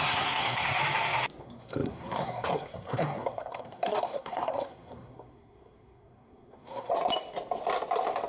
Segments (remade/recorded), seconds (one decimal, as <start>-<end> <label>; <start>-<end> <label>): 0.0-0.8 remade; 0.8-1.4 recorded; 1.4-6.9 remade; 6.9-8.3 recorded